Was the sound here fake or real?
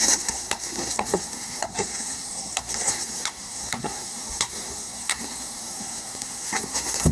fake